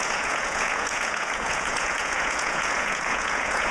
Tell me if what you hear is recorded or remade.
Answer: remade